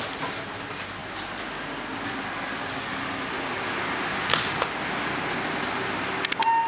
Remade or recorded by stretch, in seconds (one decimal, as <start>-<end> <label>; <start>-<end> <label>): 0.0-6.7 recorded